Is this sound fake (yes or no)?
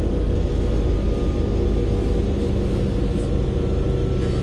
no